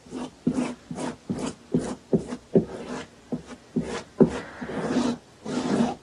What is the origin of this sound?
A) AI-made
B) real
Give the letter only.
B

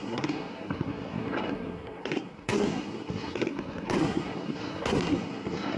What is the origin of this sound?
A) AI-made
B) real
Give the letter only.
A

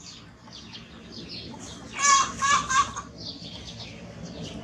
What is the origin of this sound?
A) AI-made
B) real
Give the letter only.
B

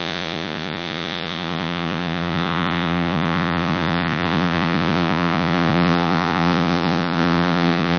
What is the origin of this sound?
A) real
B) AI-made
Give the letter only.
B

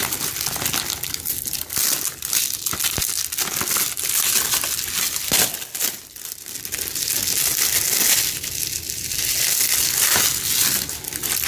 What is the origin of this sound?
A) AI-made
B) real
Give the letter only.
B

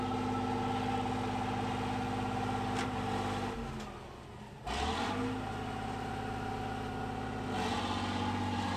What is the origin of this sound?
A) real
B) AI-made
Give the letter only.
A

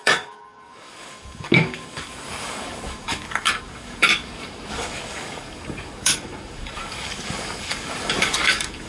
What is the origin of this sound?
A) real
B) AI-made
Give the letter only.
B